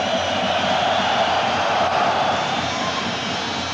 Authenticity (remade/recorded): recorded